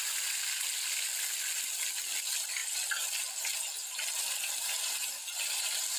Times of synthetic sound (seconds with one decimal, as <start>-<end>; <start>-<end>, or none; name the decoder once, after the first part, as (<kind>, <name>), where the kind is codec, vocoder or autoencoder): none